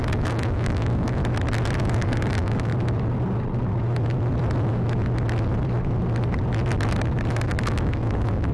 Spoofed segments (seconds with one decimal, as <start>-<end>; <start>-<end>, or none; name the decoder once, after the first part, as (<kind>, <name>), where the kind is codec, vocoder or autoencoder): 0.0-1.2 (codec, DAC); 1.8-2.7; 7.3-8.5